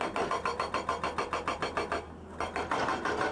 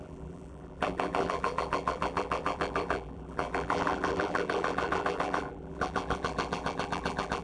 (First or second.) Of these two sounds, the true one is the first